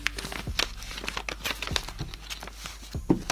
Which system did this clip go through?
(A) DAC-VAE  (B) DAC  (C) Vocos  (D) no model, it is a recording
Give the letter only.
D